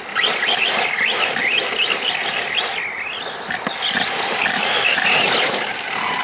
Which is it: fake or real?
real